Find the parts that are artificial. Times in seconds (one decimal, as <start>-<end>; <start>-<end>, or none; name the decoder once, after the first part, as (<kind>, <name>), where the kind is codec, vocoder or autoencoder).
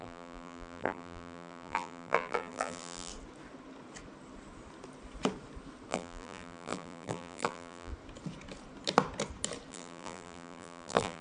0.0-3.1 (vocoder, BigVGAN v2); 5.9-7.9; 9.7-11.2